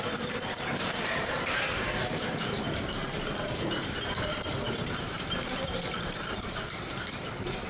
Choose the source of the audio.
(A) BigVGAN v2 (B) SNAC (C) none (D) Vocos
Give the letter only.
A